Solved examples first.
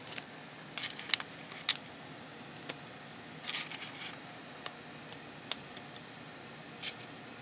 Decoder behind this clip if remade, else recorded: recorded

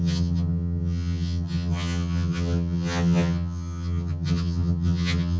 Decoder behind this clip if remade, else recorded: remade, vocoder, HiFi-GAN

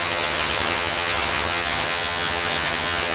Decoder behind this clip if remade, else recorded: remade, vocoder, HiFi-GAN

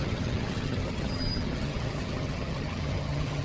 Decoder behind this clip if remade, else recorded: remade, vocoder, HiFi-GAN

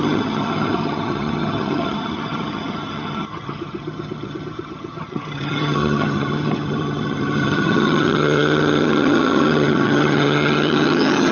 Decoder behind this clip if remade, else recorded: remade, vocoder, HiFi-GAN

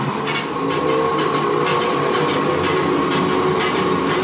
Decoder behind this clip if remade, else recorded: recorded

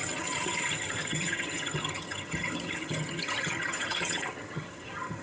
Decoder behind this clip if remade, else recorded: remade, vocoder, HiFi-GAN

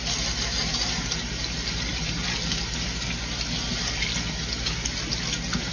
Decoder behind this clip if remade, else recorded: recorded